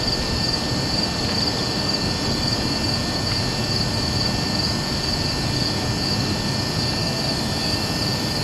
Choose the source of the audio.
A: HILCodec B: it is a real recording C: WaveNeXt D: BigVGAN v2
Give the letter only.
B